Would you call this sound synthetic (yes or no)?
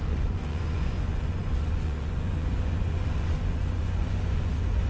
yes